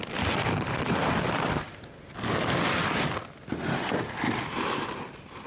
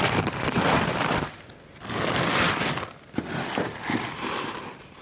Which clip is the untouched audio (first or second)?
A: first